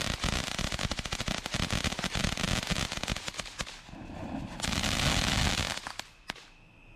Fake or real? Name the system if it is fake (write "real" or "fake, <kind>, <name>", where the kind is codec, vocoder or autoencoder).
real